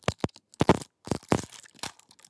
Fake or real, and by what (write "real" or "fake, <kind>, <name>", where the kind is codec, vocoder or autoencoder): real